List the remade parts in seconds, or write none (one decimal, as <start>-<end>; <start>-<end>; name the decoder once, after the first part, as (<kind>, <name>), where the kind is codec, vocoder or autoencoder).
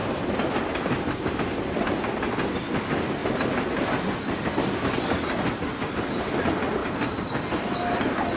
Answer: 6.8-7.3 (vocoder, BigVGAN v2)